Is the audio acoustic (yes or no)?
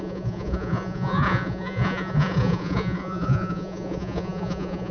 no